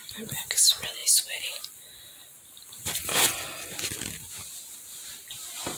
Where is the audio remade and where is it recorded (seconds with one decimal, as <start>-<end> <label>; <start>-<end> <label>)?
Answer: 0.0-1.0 recorded; 1.0-4.5 remade; 4.5-5.8 recorded